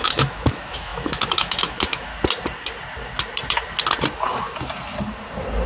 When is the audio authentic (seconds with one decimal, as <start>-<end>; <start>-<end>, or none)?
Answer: 2.1-5.7